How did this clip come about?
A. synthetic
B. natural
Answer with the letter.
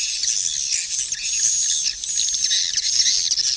B